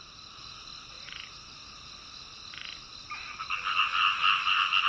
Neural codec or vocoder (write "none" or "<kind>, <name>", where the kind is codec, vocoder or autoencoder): none